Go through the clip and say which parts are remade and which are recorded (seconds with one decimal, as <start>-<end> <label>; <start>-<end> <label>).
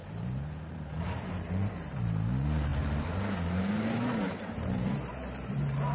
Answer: 0.0-2.7 remade; 2.7-4.4 recorded; 4.4-5.9 remade